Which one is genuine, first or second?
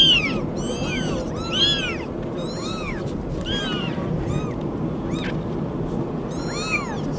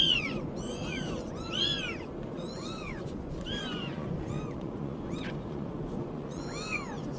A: first